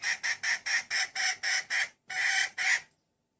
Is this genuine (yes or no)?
yes